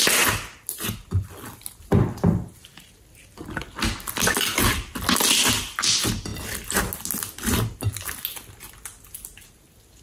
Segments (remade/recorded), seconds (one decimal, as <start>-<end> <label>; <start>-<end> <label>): 0.0-10.0 recorded